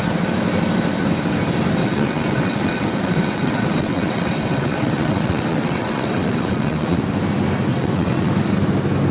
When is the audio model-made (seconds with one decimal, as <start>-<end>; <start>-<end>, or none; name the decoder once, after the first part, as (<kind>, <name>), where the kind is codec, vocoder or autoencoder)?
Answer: 1.8-7.0 (vocoder, WaveNeXt); 7.7-8.3